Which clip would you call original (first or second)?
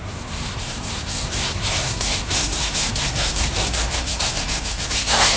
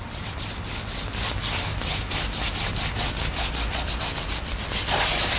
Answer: second